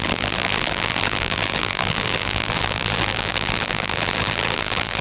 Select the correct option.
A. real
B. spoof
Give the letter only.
B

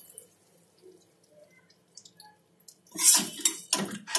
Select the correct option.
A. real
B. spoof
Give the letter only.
A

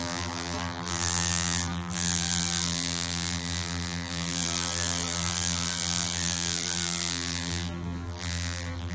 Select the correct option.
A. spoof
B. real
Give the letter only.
A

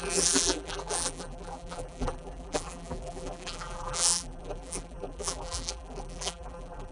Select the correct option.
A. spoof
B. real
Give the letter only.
A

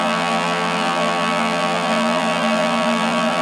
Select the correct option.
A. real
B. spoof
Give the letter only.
B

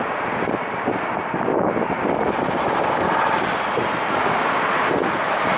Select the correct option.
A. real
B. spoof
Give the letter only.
A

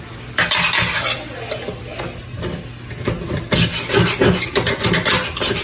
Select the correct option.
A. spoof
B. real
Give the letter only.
B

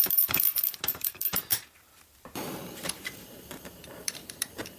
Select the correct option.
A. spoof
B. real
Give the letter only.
A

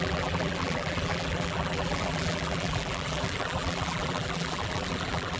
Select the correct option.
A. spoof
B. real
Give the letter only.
A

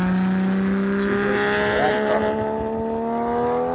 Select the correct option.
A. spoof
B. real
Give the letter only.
B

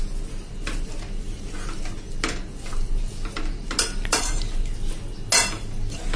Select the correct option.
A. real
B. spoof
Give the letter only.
A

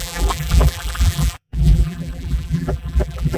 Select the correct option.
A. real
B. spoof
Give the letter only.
B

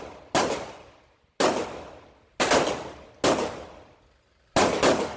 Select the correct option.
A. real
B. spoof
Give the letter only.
A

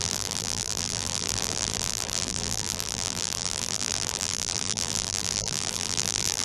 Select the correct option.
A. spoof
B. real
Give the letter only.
A